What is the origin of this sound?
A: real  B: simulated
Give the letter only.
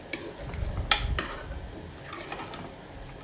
A